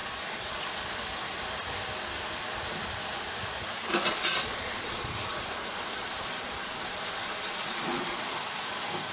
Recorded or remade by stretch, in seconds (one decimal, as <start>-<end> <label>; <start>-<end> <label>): 0.0-0.6 remade; 0.6-3.9 recorded; 3.9-8.2 remade; 8.2-9.1 recorded